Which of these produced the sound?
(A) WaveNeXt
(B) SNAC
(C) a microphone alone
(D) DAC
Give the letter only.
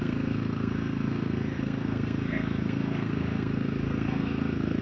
B